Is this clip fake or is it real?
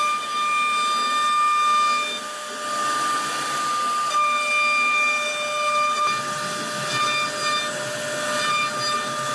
real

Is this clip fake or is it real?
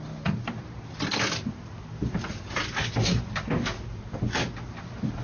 real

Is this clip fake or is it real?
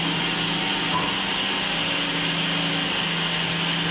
real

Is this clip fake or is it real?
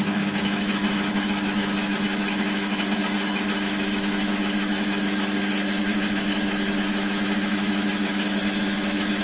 fake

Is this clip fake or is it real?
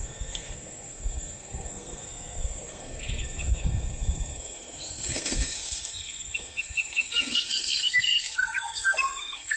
fake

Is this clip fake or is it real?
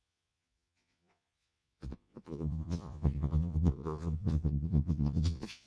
fake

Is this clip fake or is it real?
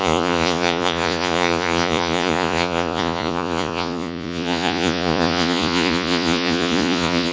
fake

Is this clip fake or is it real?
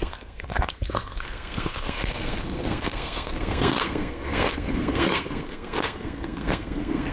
fake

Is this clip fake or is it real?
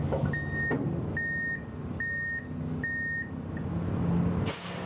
real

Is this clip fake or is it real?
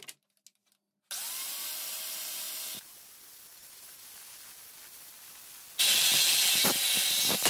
real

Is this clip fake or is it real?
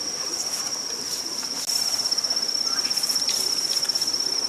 real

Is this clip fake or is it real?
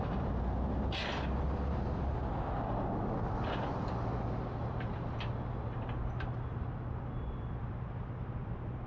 real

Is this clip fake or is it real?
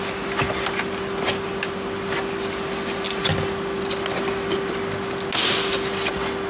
real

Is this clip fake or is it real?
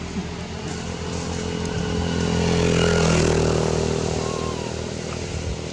real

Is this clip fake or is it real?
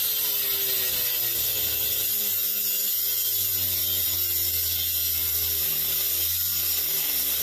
real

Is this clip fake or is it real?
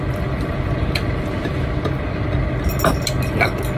real